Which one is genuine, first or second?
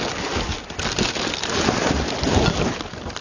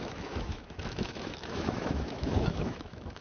first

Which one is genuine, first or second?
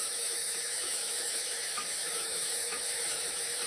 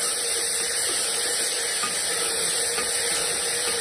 second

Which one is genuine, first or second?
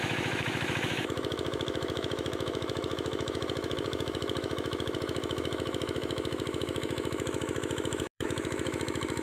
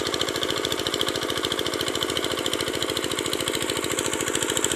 second